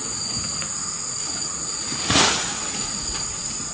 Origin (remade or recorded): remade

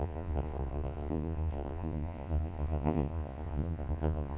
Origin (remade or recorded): remade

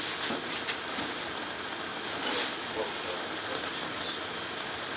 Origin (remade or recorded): recorded